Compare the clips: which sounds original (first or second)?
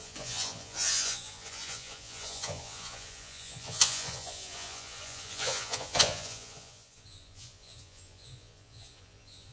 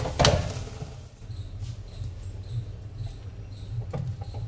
second